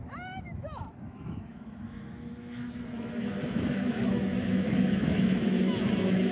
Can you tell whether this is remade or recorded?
remade